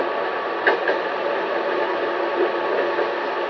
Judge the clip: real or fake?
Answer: real